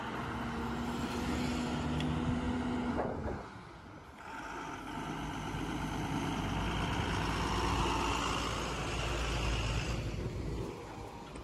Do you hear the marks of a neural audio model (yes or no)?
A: no